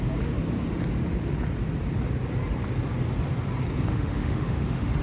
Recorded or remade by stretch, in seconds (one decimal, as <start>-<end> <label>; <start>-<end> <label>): 0.0-3.9 recorded; 3.9-5.0 remade